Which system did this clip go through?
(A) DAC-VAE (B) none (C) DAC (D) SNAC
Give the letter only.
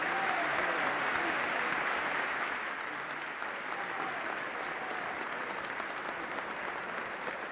B